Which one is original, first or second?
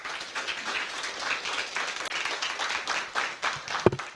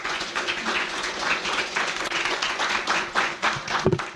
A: first